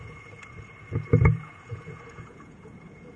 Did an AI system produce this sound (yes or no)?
yes